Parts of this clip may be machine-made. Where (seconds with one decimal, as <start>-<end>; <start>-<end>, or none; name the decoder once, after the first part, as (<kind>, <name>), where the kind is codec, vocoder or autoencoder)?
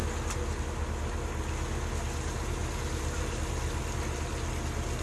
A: none